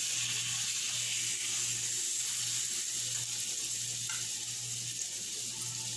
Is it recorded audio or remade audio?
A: recorded